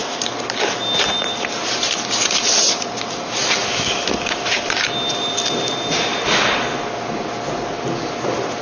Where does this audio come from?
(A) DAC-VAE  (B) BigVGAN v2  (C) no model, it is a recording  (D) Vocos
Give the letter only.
C